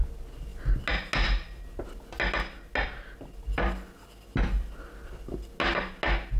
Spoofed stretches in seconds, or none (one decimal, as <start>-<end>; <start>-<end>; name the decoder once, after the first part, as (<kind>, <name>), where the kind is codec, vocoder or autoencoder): none